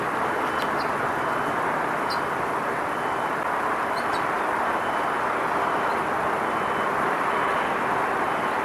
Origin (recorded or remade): recorded